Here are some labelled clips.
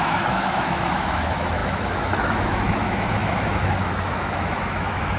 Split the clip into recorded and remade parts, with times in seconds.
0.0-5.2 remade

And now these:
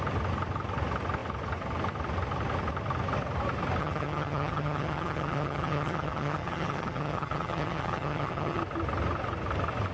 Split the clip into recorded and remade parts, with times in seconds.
0.0-3.8 recorded; 3.8-8.6 remade; 8.6-9.9 recorded

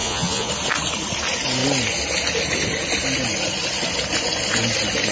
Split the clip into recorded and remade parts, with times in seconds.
0.0-0.5 remade; 0.5-5.1 recorded